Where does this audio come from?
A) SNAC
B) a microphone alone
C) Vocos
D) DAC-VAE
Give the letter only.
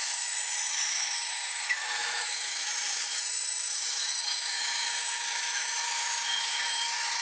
D